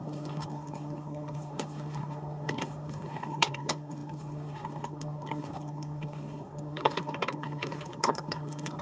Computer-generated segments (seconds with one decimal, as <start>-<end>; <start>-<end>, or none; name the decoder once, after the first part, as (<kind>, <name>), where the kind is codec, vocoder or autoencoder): 0.0-8.8 (codec, SNAC)